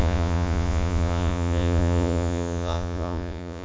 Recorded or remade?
remade